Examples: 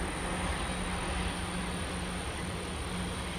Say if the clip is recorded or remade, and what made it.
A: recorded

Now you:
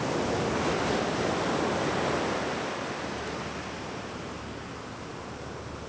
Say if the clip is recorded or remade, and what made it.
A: recorded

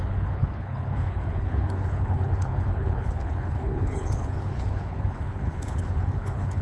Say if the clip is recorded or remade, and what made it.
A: remade, codec, HILCodec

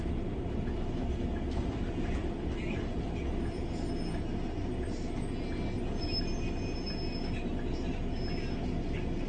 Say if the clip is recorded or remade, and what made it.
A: recorded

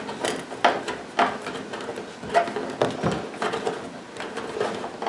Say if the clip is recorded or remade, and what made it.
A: recorded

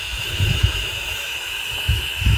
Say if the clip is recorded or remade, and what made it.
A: remade, autoencoder, DAC-VAE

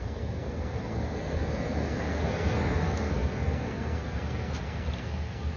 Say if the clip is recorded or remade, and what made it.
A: remade, codec, SNAC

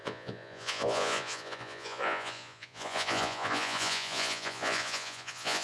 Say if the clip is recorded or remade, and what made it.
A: remade, vocoder, Vocos